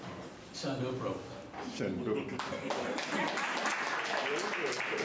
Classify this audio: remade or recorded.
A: recorded